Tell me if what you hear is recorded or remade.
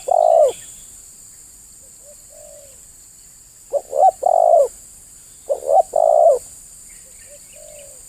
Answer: recorded